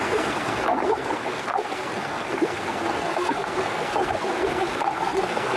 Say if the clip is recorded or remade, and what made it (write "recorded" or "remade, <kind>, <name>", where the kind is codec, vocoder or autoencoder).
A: remade, codec, SNAC